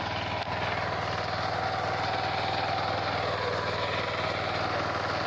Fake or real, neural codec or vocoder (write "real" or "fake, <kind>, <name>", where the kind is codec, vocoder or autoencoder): real